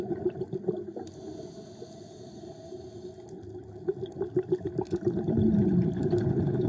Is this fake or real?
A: real